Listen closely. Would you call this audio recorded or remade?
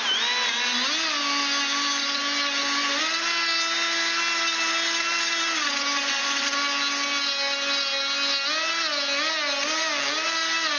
recorded